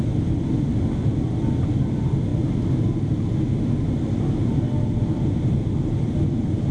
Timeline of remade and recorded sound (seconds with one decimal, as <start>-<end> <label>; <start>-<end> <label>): 0.0-2.3 remade; 2.3-5.3 recorded; 5.3-6.7 remade